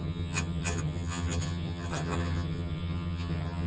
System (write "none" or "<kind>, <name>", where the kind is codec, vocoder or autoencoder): vocoder, HiFi-GAN